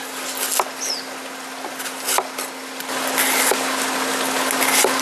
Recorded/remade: recorded